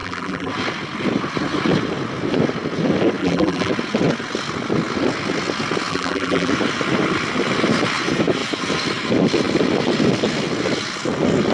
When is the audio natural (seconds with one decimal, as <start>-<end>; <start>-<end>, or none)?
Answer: 0.5-3.2; 3.7-5.9; 6.5-11.5